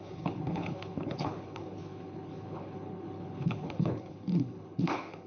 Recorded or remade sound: remade